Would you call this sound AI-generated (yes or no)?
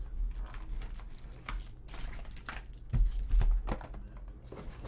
no